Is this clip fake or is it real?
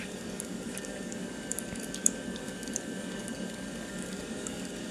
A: fake